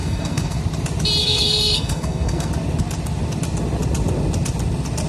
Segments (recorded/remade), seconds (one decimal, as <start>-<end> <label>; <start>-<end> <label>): 0.0-0.6 remade; 0.6-1.2 recorded; 1.2-2.5 remade; 2.5-5.1 recorded